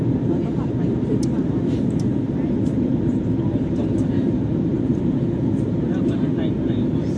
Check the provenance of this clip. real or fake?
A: fake